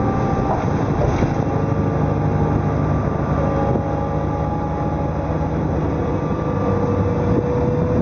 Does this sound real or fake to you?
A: real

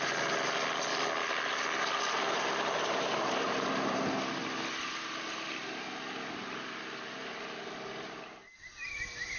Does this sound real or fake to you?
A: real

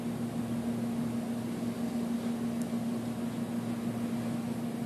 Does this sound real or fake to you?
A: real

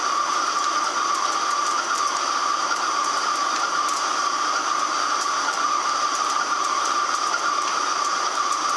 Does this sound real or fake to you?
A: fake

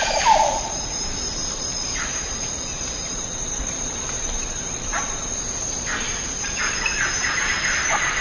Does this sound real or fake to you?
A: fake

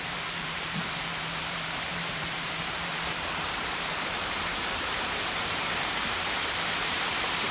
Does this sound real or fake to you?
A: fake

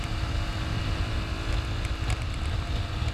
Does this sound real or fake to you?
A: real